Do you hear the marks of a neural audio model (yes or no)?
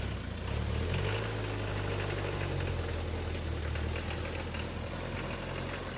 no